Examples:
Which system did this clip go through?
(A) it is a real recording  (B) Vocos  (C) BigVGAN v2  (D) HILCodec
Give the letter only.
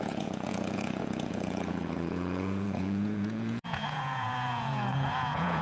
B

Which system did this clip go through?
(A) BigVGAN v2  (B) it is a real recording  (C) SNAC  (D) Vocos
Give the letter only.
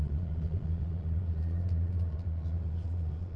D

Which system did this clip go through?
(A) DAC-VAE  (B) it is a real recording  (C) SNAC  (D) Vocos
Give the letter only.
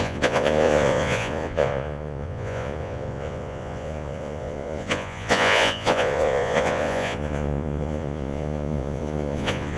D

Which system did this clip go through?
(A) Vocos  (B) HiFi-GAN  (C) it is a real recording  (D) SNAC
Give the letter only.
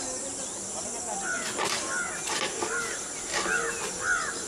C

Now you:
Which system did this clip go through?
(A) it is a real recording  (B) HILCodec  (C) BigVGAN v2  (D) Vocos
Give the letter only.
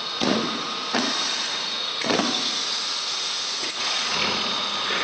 D